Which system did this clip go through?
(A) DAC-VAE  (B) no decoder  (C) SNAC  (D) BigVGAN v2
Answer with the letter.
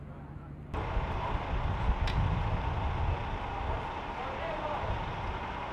B